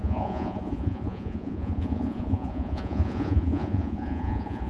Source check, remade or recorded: remade